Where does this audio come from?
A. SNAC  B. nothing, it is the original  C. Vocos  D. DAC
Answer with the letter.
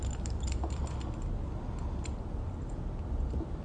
B